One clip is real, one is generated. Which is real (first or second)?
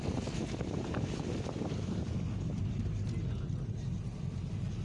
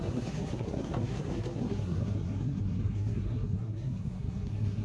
first